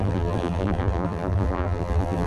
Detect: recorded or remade remade